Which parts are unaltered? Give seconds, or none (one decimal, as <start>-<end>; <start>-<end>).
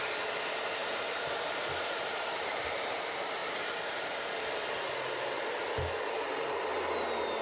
0.0-0.8; 3.0-7.4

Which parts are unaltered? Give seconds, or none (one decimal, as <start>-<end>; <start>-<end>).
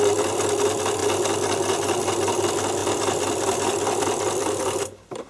0.0-2.8